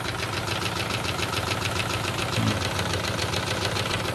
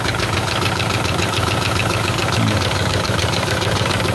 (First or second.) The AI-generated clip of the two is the second